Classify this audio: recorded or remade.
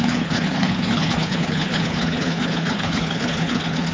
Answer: remade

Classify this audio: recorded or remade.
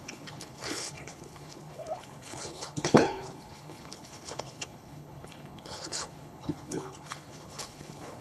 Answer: remade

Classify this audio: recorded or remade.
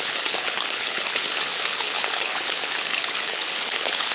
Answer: remade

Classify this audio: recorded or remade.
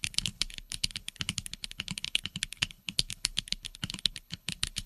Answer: remade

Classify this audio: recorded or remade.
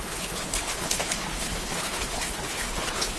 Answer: remade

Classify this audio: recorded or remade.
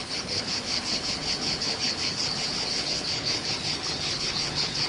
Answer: remade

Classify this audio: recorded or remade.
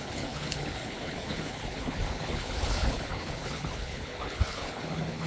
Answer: remade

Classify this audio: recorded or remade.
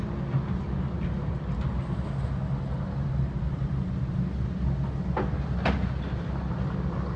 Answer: recorded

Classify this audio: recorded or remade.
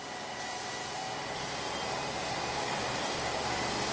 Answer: recorded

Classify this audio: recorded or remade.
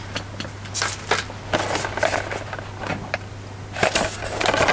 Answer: recorded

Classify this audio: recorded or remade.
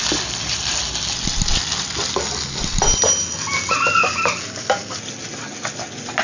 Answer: recorded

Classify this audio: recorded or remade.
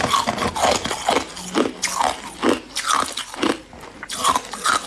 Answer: recorded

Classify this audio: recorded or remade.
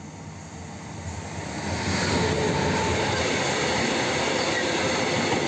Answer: recorded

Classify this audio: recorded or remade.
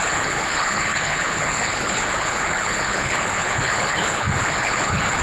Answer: remade